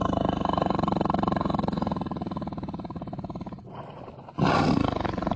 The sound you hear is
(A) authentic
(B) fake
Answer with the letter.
A